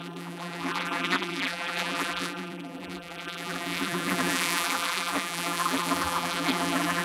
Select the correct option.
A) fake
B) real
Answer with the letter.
A